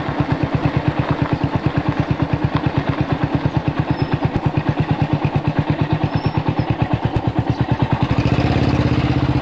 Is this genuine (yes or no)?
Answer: yes